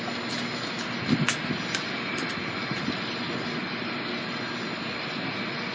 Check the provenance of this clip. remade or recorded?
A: recorded